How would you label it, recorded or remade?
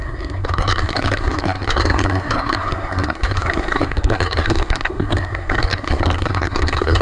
remade